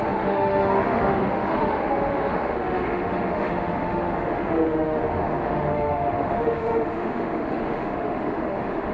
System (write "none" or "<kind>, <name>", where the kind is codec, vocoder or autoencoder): autoencoder, DAC-VAE